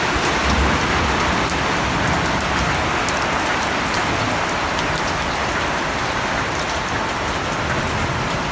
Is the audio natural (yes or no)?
yes